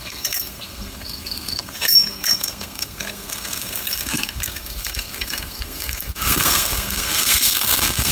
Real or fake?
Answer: fake